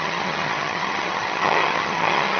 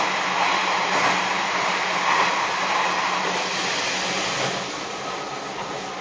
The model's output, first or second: first